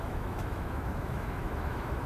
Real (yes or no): no